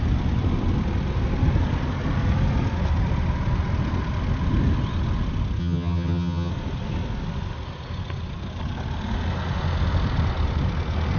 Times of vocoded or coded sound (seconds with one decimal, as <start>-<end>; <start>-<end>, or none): 5.6-6.5